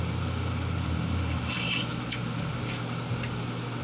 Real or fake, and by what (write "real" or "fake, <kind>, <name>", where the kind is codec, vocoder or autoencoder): real